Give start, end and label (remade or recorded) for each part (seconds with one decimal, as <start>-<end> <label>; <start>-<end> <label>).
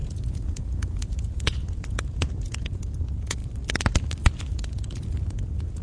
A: 0.0-3.4 remade; 3.4-4.4 recorded; 4.4-5.8 remade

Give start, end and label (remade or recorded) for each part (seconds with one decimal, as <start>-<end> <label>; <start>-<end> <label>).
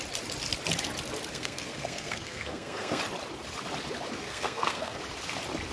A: 0.0-1.3 recorded; 1.3-3.0 remade; 3.0-4.2 recorded; 4.2-5.0 remade; 5.0-5.7 recorded